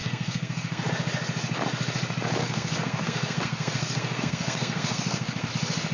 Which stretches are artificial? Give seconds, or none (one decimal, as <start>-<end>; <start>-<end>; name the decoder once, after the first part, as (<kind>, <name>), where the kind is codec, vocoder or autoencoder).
0.0-0.9 (codec, SNAC); 2.4-5.5